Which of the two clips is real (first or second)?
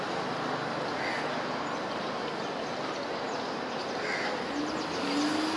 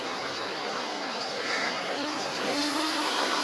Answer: first